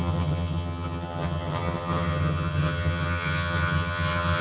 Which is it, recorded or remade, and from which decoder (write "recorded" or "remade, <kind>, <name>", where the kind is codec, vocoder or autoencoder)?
remade, vocoder, HiFi-GAN